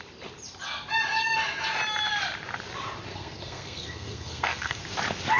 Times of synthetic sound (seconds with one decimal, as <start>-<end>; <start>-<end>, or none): 3.1-4.8